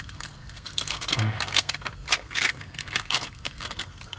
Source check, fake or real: fake